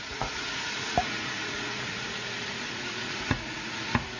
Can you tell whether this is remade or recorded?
remade